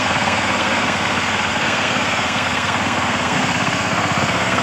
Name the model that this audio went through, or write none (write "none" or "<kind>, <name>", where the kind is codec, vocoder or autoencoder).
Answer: codec, SNAC